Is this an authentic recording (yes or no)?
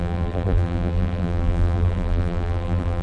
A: no